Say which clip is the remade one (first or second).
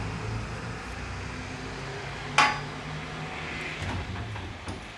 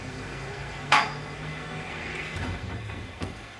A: second